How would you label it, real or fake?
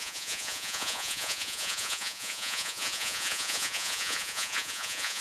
fake